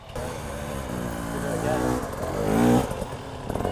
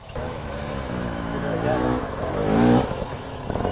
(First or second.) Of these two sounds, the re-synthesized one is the second